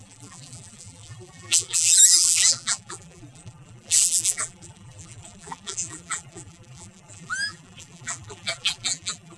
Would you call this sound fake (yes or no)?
yes